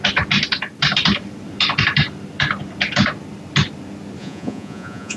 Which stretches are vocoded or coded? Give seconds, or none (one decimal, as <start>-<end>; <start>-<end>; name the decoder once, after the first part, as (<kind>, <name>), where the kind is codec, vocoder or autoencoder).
4.2-5.2 (vocoder, Vocos)